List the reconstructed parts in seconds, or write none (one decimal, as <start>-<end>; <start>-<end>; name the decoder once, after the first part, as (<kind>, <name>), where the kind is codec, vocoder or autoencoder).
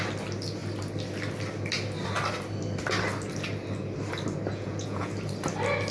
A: 4.5-5.1 (vocoder, Vocos)